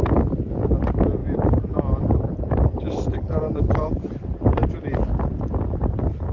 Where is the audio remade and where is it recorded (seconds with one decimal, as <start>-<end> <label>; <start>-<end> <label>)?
0.0-1.2 recorded; 1.2-4.7 remade; 4.7-6.3 recorded